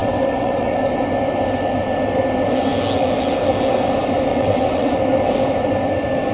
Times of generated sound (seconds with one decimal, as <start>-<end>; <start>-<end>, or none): 0.0-0.8; 4.3-4.9

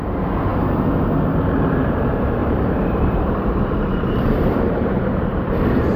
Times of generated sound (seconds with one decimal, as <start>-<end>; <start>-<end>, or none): 2.4-5.5

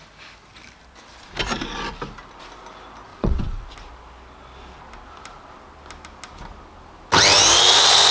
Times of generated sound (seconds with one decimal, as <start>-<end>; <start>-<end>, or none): 3.1-3.7